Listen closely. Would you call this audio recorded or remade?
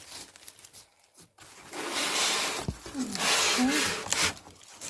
recorded